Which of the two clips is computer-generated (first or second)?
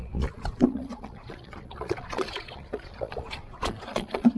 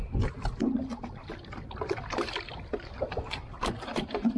first